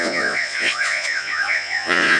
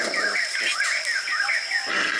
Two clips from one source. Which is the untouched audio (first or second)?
second